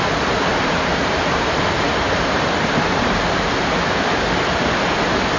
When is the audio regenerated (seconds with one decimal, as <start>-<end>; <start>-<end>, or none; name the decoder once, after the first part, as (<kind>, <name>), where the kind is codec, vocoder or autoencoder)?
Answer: 0.5-3.7 (vocoder, BigVGAN v2)